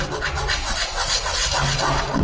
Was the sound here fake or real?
real